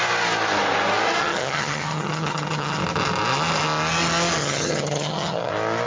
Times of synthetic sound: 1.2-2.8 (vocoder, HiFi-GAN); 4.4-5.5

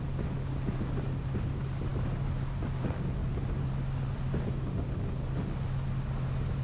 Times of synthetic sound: none

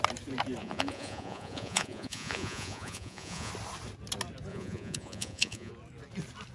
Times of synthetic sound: 0.6-3.5 (vocoder, Vocos); 4.5-5.7

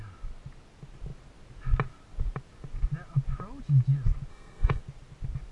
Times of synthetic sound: 4.3-4.8 (codec, SNAC)